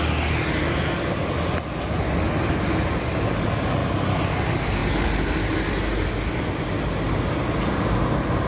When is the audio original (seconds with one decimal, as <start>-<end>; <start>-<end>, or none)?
0.0-8.5